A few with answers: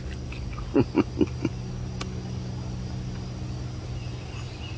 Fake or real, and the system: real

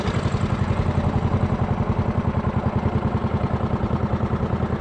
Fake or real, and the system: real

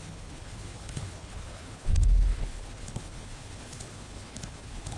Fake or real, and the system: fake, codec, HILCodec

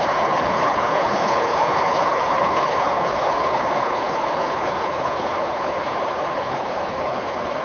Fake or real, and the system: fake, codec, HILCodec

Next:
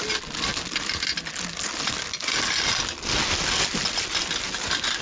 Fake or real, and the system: real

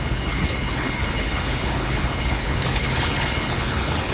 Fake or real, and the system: fake, codec, HILCodec